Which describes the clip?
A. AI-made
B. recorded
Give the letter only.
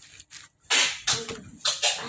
B